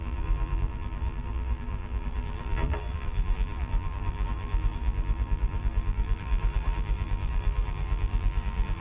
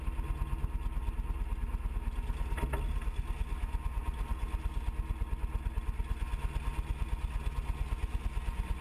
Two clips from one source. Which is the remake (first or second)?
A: first